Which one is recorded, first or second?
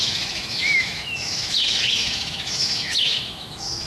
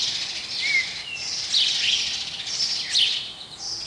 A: second